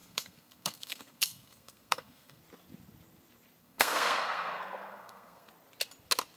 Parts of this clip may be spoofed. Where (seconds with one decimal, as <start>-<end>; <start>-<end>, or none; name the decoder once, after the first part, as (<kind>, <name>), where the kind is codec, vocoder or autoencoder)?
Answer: 0.0-2.4 (codec, SNAC); 3.6-5.5